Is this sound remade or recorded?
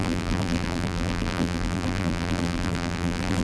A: remade